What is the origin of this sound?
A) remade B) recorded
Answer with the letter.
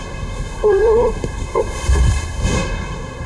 A